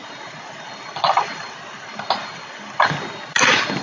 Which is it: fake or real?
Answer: real